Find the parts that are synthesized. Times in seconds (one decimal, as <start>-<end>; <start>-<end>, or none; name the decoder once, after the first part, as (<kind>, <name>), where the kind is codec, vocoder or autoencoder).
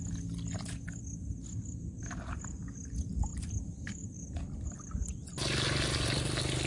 3.3-5.1 (vocoder, BigVGAN v2)